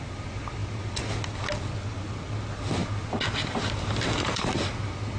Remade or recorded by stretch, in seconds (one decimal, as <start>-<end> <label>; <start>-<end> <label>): 0.0-5.2 recorded